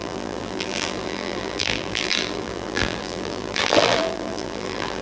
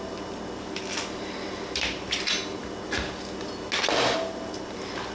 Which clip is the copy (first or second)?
first